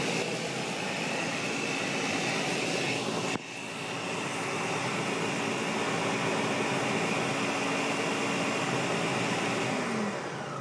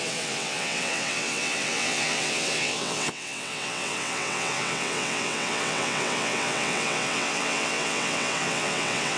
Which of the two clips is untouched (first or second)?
first